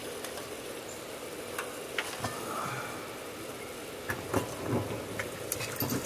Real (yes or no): yes